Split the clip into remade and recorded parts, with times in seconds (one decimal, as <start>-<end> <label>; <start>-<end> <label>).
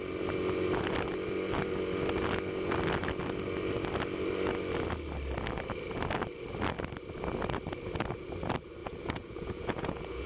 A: 0.0-8.8 recorded; 8.8-10.3 remade